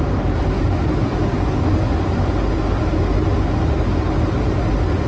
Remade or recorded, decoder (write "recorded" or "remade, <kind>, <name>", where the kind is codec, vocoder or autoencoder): recorded